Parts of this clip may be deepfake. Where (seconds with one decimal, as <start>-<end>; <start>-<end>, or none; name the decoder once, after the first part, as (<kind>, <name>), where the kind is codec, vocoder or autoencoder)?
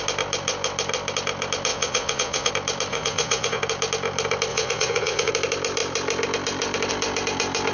1.7-2.5 (vocoder, Vocos); 2.9-3.6; 4.5-5.3